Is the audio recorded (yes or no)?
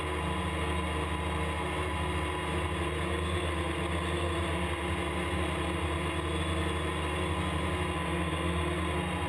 yes